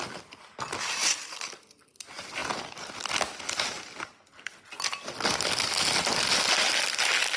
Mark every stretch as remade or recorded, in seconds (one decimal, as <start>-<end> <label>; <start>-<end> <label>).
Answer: 0.0-7.4 recorded